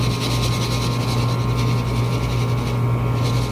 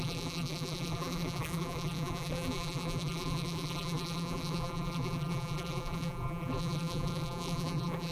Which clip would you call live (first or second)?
first